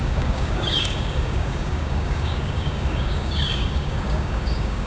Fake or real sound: fake